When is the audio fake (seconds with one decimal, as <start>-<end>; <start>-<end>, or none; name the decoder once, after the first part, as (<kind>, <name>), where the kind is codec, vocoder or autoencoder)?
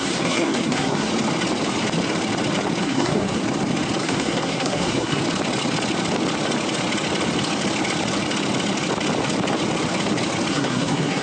0.0-1.1 (codec, SNAC); 2.8-3.4; 4.0-5.2; 10.5-11.2